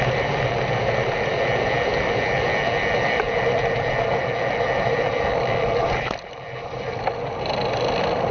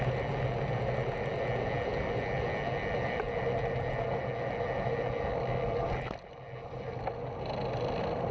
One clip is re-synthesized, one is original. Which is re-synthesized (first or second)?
first